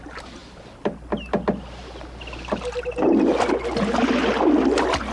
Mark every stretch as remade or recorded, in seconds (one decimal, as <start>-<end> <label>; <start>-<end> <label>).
0.0-5.1 recorded